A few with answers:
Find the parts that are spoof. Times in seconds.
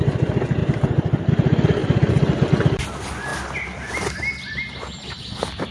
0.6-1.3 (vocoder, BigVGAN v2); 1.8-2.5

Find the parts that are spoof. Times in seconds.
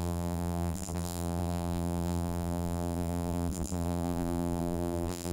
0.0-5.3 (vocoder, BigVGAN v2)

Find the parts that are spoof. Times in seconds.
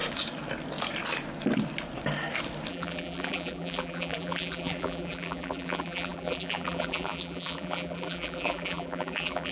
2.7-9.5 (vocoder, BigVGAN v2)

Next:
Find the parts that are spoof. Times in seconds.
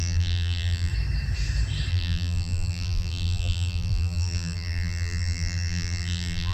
0.0-0.9 (vocoder, BigVGAN v2); 1.9-6.5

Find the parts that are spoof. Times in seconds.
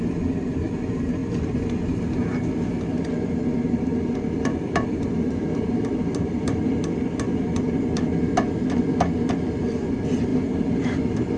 1.2-1.8 (vocoder, BigVGAN v2); 3.9-7.6; 10.3-10.8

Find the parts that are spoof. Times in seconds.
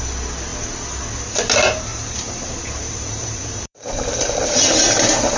1.9-5.4 (vocoder, BigVGAN v2)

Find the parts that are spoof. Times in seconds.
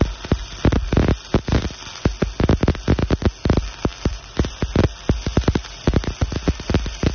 3.9-4.5 (vocoder, BigVGAN v2)